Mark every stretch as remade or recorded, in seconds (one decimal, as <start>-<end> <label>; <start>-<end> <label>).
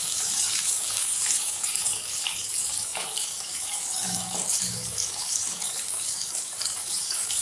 0.0-7.4 remade